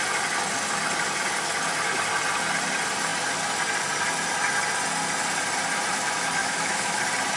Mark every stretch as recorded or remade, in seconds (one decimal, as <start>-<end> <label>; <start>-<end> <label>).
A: 0.0-6.4 recorded; 6.4-7.0 remade; 7.0-7.4 recorded